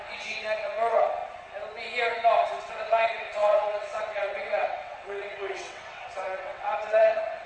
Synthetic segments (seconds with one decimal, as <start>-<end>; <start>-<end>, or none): 0.0-1.2; 2.6-7.5